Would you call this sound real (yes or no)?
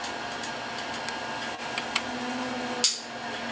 yes